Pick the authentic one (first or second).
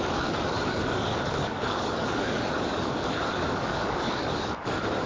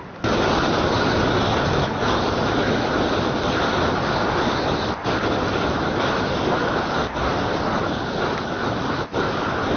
second